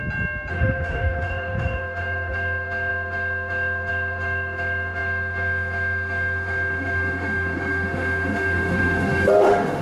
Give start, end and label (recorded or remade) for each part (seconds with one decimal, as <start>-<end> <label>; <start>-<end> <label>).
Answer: 0.0-0.5 recorded; 0.5-9.8 remade